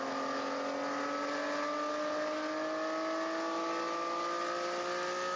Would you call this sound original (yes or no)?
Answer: yes